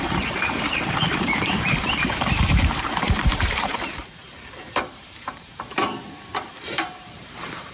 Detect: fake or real fake